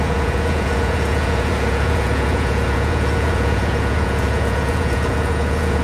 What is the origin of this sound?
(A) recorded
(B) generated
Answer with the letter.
B